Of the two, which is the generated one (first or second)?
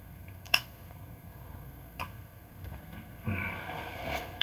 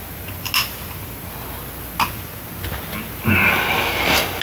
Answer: first